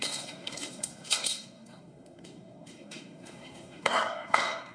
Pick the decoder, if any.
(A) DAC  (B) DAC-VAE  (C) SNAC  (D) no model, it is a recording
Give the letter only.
C